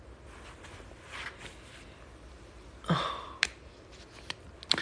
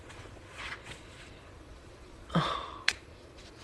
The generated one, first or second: second